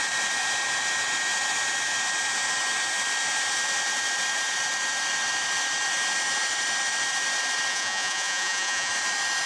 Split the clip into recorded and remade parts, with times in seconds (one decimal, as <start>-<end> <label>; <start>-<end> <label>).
0.0-7.7 recorded; 7.7-8.9 remade; 8.9-9.5 recorded